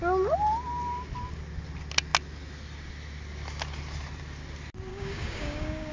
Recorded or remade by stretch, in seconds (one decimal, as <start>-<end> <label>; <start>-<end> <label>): 0.0-4.9 recorded; 4.9-5.9 remade